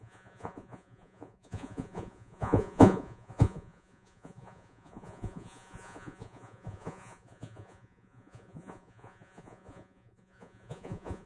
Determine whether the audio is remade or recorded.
remade